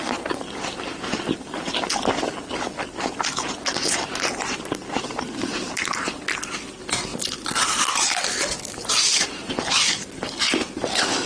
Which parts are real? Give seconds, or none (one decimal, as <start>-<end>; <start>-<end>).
0.0-11.3